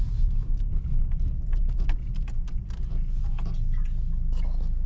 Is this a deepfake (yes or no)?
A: no